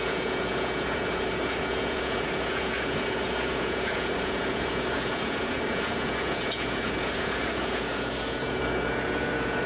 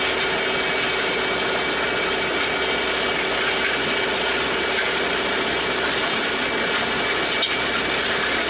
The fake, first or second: first